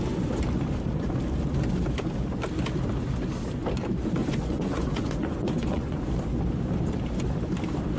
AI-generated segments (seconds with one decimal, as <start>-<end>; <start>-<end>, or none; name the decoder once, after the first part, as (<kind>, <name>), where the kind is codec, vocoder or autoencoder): 4.2-6.1 (vocoder, Vocos)